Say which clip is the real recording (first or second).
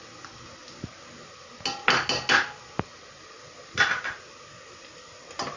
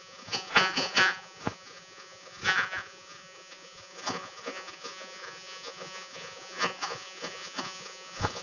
first